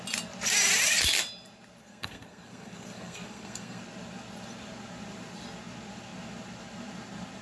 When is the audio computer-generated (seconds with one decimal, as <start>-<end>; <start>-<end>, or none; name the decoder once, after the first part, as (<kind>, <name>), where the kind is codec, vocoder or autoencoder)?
1.8-3.8 (codec, SNAC)